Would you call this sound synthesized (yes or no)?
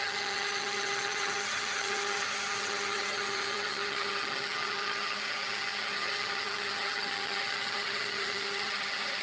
yes